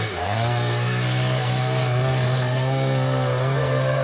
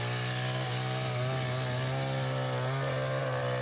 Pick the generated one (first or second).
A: first